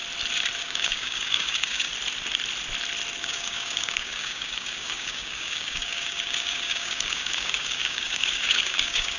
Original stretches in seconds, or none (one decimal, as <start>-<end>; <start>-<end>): 0.0-0.6; 1.9-3.2